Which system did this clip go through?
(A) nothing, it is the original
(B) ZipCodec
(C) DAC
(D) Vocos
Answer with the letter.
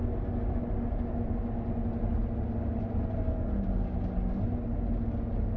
A